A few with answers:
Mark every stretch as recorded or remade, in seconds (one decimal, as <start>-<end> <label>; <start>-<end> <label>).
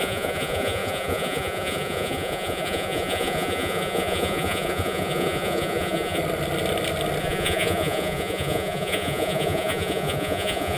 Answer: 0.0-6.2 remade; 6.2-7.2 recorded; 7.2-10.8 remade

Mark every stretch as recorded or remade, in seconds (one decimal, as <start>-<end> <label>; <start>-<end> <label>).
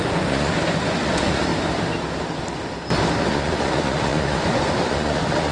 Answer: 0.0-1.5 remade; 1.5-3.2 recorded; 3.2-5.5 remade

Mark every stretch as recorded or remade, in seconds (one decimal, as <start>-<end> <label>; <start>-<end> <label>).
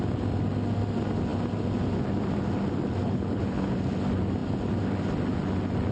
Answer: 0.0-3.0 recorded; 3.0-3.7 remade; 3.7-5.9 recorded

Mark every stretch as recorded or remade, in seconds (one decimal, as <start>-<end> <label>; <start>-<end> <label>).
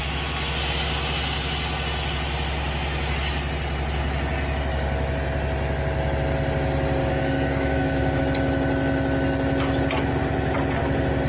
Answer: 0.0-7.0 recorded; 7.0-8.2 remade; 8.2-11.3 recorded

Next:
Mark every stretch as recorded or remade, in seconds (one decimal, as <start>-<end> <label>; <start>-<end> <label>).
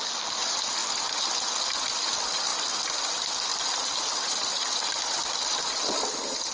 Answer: 0.0-6.5 recorded